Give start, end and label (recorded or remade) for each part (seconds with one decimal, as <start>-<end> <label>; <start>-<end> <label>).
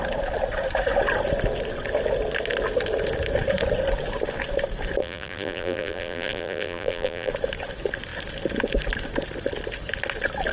0.0-5.0 recorded; 5.0-7.3 remade; 7.3-10.5 recorded